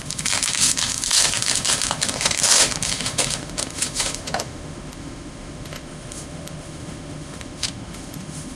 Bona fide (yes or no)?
no